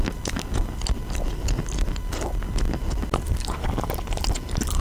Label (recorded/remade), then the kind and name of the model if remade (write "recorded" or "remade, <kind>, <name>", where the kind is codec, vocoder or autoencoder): recorded